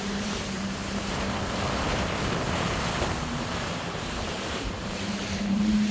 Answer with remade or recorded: remade